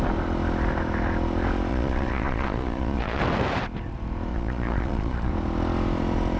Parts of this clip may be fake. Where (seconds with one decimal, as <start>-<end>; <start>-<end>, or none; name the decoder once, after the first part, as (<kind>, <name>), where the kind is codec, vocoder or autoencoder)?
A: 1.7-3.2 (vocoder, Vocos); 4.3-5.3